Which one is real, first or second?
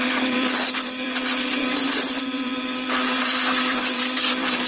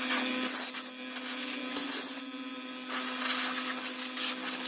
second